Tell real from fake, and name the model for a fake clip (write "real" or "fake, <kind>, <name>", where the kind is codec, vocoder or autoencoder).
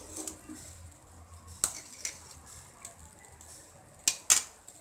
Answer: real